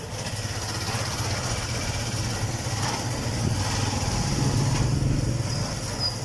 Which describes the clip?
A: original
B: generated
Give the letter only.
A